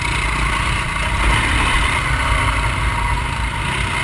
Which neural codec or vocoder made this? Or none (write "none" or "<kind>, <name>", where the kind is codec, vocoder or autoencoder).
none